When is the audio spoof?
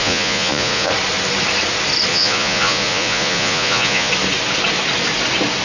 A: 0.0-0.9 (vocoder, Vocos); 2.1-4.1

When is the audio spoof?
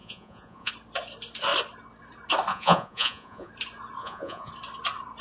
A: 0.0-0.7 (vocoder, Vocos); 2.5-3.5; 4.0-4.5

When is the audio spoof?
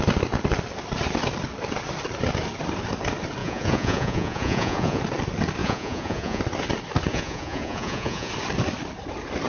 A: 3.4-5.0 (vocoder, Vocos); 5.6-6.4; 7.1-8.3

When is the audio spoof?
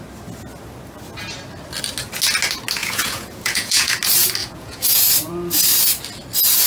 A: 2.8-3.9 (vocoder, Vocos); 4.4-5.0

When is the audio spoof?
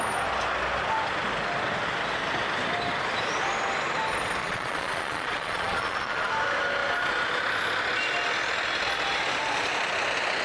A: 4.4-6.3 (vocoder, Vocos)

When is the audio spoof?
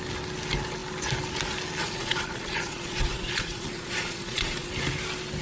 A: 1.8-4.7 (vocoder, Vocos)